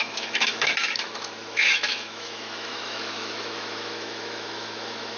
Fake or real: fake